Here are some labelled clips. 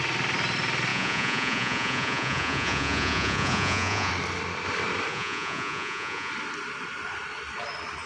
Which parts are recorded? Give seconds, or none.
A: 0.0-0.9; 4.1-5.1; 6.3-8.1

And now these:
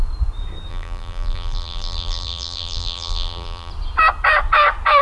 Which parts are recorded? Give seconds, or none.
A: 0.0-0.7; 3.7-5.0

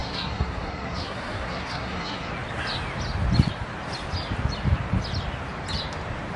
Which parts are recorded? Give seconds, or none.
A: 2.3-6.4

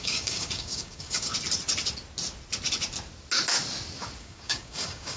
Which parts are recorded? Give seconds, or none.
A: 1.3-4.2